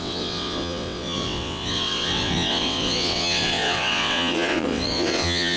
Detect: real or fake fake